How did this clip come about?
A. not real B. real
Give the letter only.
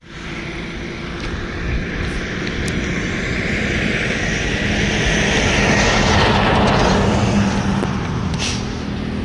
B